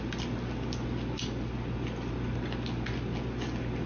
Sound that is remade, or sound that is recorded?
recorded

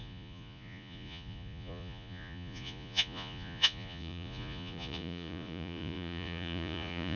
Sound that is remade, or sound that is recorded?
remade